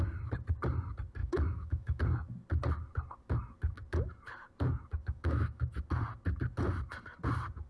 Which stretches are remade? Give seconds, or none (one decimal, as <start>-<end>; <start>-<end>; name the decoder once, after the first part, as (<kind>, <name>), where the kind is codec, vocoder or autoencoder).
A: 1.2-2.0 (autoencoder, DAC-VAE); 4.9-5.7